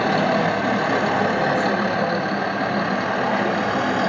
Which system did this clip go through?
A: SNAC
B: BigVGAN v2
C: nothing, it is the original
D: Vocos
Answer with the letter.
C